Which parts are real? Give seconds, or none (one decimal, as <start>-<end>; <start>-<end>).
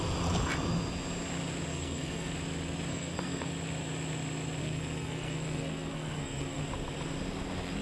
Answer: 0.0-1.7; 2.3-2.9; 3.5-4.6; 6.6-7.8